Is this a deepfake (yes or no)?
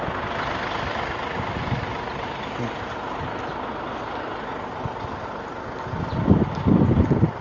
no